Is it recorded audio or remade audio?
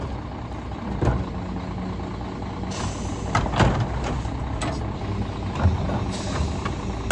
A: recorded